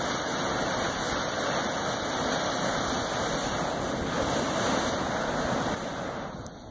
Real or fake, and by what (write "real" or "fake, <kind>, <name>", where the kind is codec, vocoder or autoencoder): real